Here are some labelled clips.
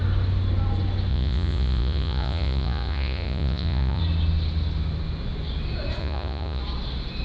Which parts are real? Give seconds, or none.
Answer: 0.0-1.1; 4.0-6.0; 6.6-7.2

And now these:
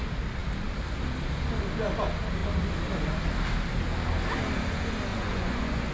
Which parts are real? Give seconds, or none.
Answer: 0.0-5.1

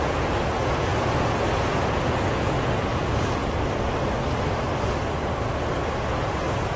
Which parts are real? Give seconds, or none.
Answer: 3.4-5.7

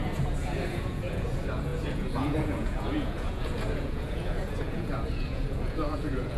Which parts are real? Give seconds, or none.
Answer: none

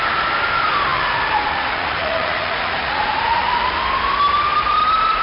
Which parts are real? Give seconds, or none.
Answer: 0.0-0.9; 3.8-5.2